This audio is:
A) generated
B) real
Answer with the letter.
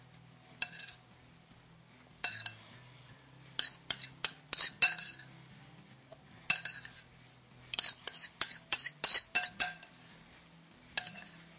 B